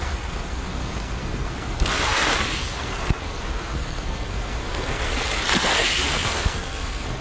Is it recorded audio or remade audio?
remade